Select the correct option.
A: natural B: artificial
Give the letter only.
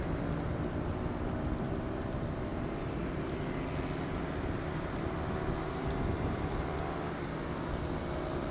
A